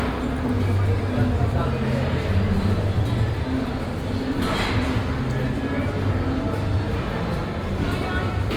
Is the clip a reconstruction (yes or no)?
no